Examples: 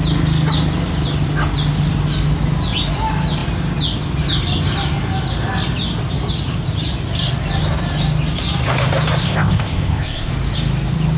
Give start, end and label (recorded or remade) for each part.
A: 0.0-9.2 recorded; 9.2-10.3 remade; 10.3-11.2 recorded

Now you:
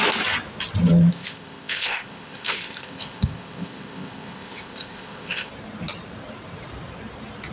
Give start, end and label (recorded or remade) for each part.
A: 0.0-1.1 recorded; 1.1-5.5 remade; 5.5-7.5 recorded

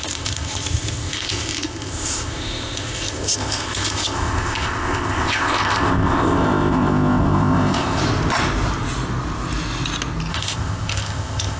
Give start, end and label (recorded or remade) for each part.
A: 0.0-8.0 remade; 8.0-10.3 recorded; 10.3-11.6 remade

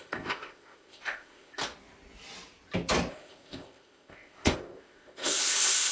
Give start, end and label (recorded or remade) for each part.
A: 0.0-1.6 remade; 1.6-3.1 recorded; 3.1-5.9 remade

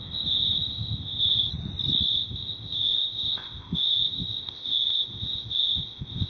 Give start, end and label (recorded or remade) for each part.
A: 0.0-1.5 remade; 1.5-2.1 recorded; 2.1-6.3 remade